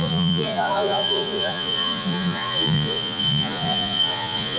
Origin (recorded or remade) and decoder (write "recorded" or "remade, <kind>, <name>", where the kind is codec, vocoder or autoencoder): remade, vocoder, Vocos